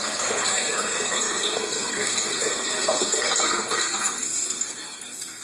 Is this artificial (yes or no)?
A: yes